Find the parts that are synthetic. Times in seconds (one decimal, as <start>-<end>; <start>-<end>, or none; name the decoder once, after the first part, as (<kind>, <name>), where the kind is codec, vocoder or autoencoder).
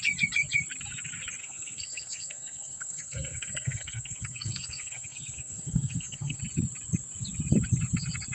1.4-6.4 (codec, SNAC)